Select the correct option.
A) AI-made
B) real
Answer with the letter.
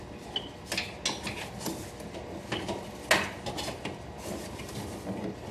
B